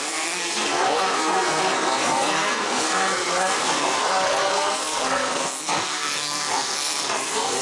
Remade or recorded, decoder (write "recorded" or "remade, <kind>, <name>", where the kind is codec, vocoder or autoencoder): remade, codec, SNAC